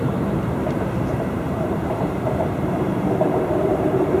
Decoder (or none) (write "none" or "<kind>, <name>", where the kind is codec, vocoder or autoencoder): vocoder, BigVGAN v2